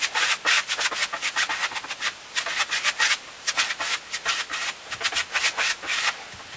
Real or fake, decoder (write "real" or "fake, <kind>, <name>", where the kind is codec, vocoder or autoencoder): real